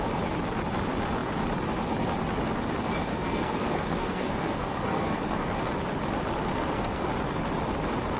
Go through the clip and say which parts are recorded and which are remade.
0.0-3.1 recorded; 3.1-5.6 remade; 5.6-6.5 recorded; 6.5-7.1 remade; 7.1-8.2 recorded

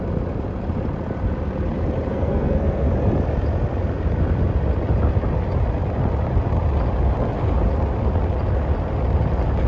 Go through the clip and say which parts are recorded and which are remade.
0.0-2.1 recorded; 2.1-2.9 remade; 2.9-9.7 recorded

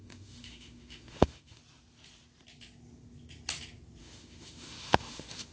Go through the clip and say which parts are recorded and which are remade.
0.0-1.6 remade; 1.6-4.0 recorded; 4.0-5.5 remade

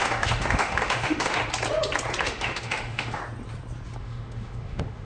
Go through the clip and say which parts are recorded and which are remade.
0.0-1.4 remade; 1.4-2.2 recorded; 2.2-3.2 remade; 3.2-4.0 recorded; 4.0-5.0 remade

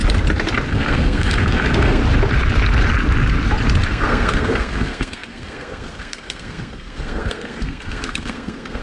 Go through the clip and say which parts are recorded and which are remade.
0.0-0.7 recorded; 0.7-2.0 remade; 2.0-3.9 recorded; 3.9-8.8 remade

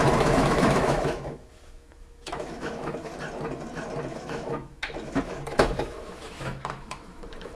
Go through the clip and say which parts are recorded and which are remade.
0.0-3.1 remade; 3.1-4.0 recorded; 4.0-7.5 remade

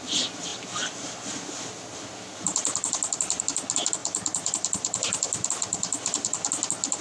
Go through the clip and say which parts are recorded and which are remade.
0.0-0.5 recorded; 0.5-3.4 remade; 3.4-4.0 recorded; 4.0-6.5 remade; 6.5-7.0 recorded